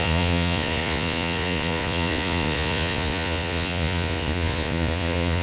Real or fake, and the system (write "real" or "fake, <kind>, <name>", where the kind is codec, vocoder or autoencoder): fake, vocoder, Vocos